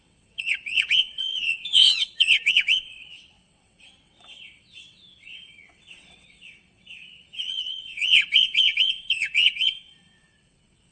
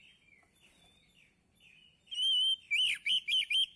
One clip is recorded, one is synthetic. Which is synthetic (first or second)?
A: first